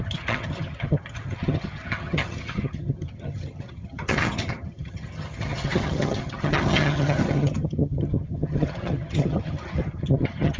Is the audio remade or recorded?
remade